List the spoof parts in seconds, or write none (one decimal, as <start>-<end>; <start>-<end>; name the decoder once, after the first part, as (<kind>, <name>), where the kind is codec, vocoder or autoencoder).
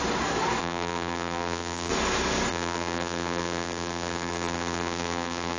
0.6-1.9 (vocoder, BigVGAN v2); 2.5-5.6